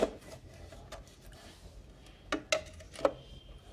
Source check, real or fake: real